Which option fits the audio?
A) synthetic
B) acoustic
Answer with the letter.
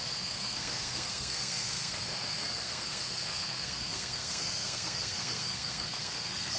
A